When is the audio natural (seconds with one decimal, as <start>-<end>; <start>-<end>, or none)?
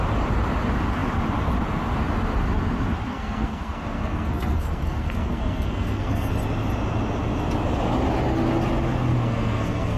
0.0-3.1; 6.3-9.1